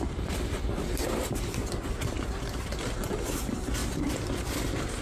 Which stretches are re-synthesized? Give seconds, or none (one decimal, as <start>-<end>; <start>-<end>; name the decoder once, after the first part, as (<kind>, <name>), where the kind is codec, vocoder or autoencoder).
none